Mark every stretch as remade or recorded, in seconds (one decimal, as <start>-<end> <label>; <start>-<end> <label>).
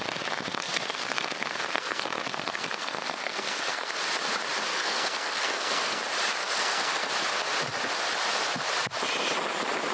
0.0-0.5 recorded; 0.5-3.9 remade; 3.9-4.7 recorded; 4.7-6.0 remade; 6.0-6.4 recorded; 6.4-7.1 remade; 7.1-9.9 recorded